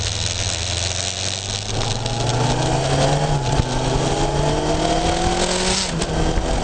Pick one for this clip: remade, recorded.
recorded